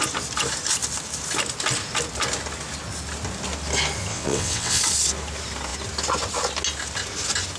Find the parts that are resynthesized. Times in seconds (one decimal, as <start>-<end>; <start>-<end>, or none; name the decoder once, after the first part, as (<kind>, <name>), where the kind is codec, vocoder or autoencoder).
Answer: 4.1-4.8 (vocoder, WaveNeXt)